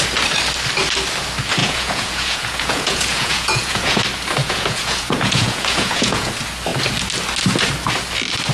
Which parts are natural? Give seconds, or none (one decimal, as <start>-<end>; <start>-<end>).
0.0-1.6; 4.0-4.4; 6.3-8.5

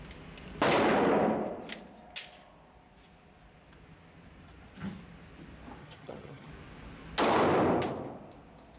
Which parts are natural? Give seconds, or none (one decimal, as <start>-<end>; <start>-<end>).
0.0-5.8; 6.5-8.8

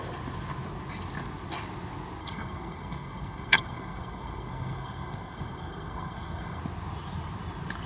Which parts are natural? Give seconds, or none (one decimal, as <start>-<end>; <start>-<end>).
0.0-2.2; 6.6-7.9

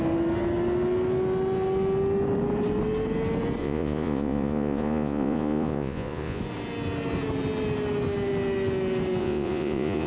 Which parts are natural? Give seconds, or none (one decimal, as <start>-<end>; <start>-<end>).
0.0-3.6; 6.4-9.2

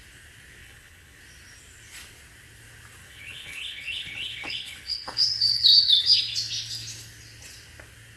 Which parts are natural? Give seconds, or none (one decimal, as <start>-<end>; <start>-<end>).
0.0-0.6; 1.2-3.0; 6.2-8.2

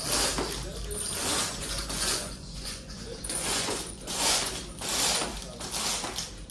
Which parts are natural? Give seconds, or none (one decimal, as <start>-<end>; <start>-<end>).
0.0-1.2; 4.5-6.5

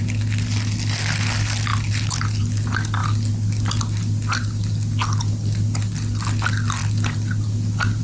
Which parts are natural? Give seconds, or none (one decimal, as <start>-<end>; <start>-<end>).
0.0-8.0

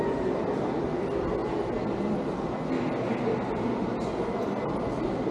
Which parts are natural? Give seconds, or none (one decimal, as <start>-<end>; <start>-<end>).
0.0-5.3